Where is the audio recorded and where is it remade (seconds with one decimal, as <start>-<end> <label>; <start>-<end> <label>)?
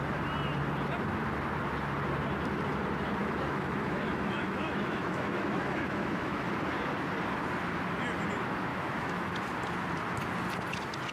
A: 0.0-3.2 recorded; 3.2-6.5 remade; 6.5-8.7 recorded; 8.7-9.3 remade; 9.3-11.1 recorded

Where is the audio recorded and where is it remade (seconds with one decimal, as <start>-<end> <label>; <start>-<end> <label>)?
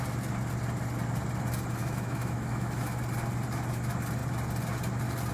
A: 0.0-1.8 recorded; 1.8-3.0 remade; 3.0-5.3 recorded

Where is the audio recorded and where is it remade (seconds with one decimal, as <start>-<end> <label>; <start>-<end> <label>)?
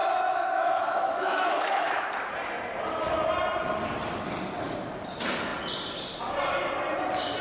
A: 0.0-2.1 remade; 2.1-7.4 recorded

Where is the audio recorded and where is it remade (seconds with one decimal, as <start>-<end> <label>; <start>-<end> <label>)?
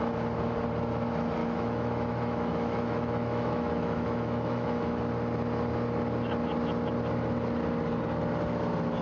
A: 0.0-1.4 recorded; 1.4-5.0 remade; 5.0-9.0 recorded